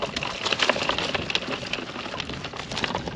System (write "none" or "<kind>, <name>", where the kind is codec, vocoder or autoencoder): none